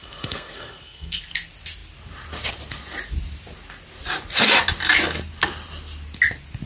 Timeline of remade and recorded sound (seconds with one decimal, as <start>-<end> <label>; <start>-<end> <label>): 0.0-1.2 remade; 1.2-6.7 recorded